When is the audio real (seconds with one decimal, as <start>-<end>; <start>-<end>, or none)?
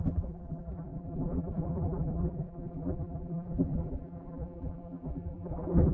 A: none